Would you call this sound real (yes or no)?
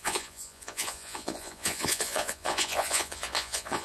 no